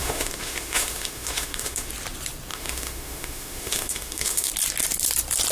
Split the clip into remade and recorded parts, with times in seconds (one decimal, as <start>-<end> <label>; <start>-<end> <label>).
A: 0.0-1.9 remade; 1.9-2.5 recorded; 2.5-4.5 remade; 4.5-5.5 recorded